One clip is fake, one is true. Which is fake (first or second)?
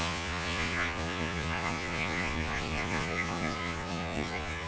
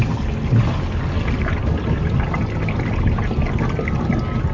first